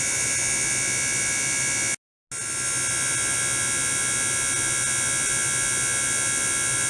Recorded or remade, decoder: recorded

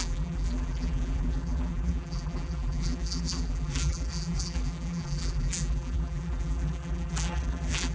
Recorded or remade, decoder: remade, vocoder, BigVGAN v2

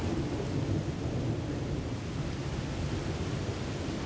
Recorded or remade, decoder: recorded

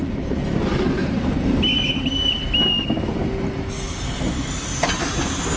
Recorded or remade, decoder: recorded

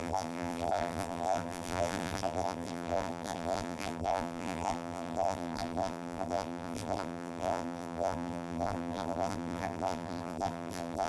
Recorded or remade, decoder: remade, vocoder, BigVGAN v2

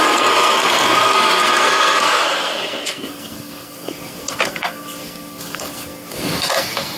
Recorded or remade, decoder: remade, codec, SNAC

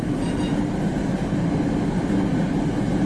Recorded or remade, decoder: recorded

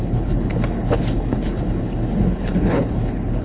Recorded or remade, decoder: remade, codec, HILCodec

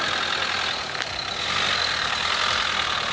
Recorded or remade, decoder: recorded